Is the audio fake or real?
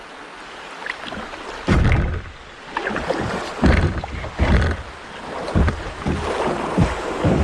real